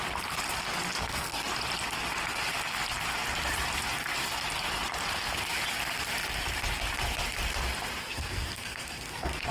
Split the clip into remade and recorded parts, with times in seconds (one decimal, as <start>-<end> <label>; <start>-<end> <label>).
0.0-1.0 recorded; 1.0-1.5 remade; 1.5-8.0 recorded; 8.0-9.5 remade